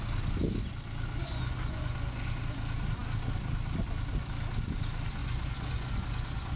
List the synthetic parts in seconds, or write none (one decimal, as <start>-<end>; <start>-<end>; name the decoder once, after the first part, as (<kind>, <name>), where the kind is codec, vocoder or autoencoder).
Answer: 1.2-2.3 (vocoder, Vocos); 5.2-6.6